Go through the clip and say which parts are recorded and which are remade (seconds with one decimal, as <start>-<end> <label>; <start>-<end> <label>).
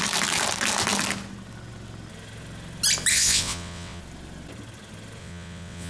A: 0.0-3.1 recorded; 3.1-4.0 remade; 4.0-5.2 recorded; 5.2-5.9 remade